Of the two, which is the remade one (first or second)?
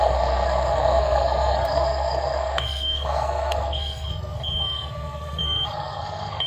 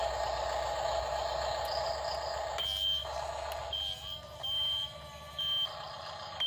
first